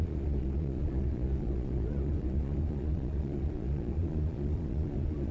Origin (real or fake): fake